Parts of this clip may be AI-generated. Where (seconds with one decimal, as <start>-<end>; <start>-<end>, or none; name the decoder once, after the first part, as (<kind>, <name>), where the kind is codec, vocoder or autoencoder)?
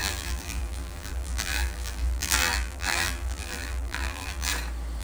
0.0-4.5 (vocoder, BigVGAN v2)